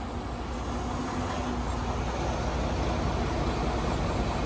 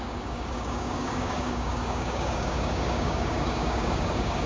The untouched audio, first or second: first